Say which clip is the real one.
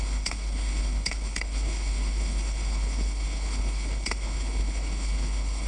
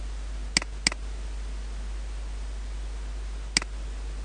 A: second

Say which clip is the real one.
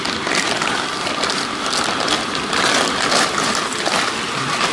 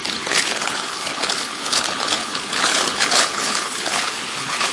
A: first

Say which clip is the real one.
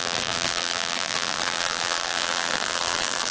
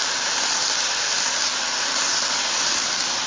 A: second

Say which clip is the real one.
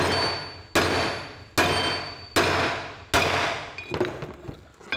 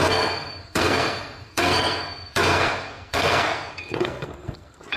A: first